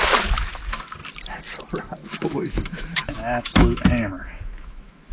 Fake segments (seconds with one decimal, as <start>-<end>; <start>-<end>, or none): 2.0-5.1